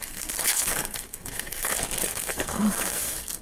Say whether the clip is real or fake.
fake